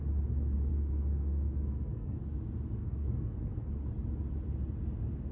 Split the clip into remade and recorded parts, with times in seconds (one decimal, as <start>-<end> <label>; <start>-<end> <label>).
0.0-0.7 recorded; 0.7-2.2 remade; 2.2-2.8 recorded; 2.8-3.7 remade; 3.7-5.3 recorded